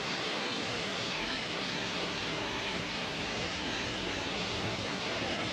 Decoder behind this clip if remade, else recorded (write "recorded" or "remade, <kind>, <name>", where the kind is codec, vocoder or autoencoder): remade, codec, SNAC